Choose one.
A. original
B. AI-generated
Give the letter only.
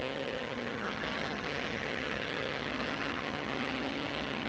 B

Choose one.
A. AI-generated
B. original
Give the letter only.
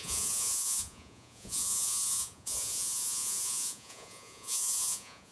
A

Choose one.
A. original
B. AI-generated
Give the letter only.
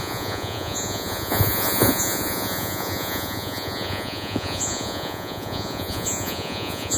B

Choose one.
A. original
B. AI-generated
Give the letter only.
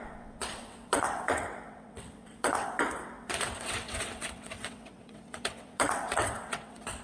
B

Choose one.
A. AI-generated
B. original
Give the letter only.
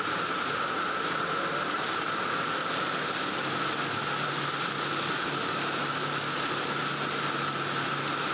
B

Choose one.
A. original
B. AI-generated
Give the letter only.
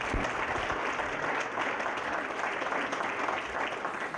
A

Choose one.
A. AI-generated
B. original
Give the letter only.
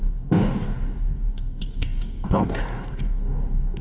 A